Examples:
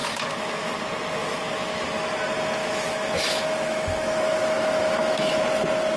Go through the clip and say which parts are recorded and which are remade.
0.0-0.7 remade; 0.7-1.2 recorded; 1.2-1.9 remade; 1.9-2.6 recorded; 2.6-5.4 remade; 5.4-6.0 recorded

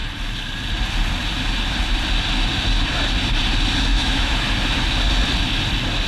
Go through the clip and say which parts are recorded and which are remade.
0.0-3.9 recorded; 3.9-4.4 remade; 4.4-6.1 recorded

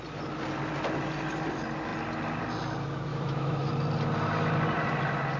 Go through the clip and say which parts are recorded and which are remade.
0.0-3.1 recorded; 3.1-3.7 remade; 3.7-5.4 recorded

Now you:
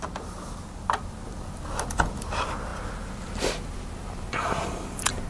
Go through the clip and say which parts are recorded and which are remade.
0.0-5.3 recorded